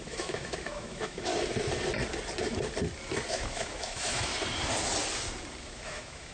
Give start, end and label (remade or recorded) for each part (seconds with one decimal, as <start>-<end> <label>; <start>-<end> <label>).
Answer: 0.0-1.3 remade; 1.3-3.3 recorded; 3.3-4.3 remade; 4.3-5.6 recorded; 5.6-6.3 remade